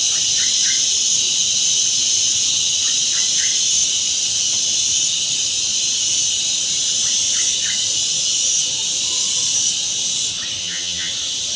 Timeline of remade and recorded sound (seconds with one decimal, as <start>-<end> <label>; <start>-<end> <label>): 0.0-10.6 recorded; 10.6-11.1 remade; 11.1-11.6 recorded

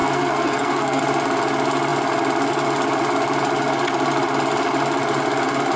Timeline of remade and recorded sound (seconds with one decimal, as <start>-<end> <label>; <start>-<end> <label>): 0.0-1.0 remade; 1.0-5.8 recorded

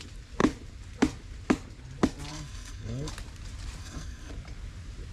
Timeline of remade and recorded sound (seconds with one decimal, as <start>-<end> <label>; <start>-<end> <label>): 0.0-2.3 recorded; 2.3-3.1 remade; 3.1-3.8 recorded; 3.8-4.3 remade; 4.3-5.1 recorded

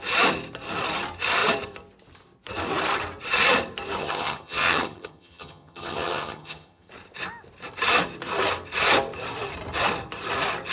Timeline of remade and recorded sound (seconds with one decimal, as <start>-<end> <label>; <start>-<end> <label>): 0.0-4.0 recorded; 4.0-6.9 remade; 6.9-10.7 recorded